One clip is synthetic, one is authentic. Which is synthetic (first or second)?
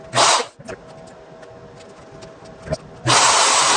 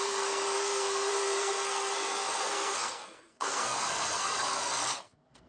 second